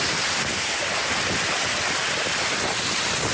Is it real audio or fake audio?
real